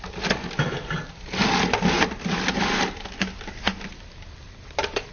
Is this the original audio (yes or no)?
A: yes